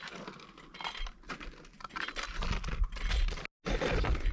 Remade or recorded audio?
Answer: recorded